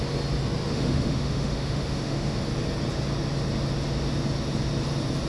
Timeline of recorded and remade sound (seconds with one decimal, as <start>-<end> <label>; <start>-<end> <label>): 0.0-0.7 recorded; 0.7-2.4 remade; 2.4-5.3 recorded